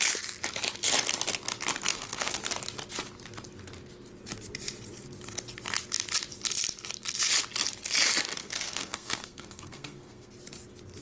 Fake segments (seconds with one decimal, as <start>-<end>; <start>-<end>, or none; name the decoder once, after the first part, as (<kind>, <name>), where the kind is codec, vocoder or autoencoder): 1.9-2.4 (codec, SNAC); 8.4-10.3